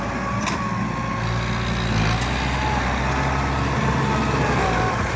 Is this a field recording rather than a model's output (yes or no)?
yes